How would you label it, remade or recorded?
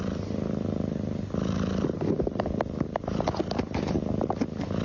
recorded